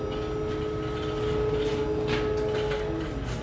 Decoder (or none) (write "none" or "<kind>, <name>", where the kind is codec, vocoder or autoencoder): none